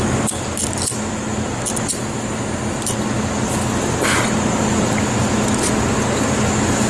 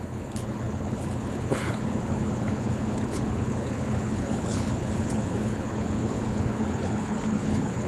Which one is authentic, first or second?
first